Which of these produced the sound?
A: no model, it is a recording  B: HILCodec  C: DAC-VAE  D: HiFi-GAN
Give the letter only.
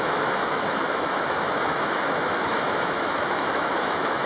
C